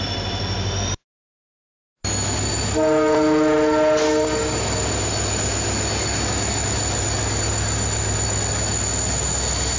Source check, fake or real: real